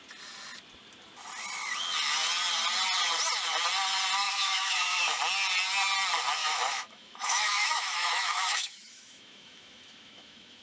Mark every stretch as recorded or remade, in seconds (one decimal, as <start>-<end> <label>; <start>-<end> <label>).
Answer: 0.0-4.3 recorded; 4.3-5.2 remade; 5.2-6.4 recorded; 6.4-10.6 remade